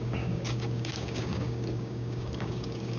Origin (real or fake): fake